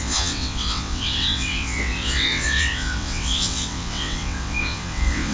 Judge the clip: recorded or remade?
remade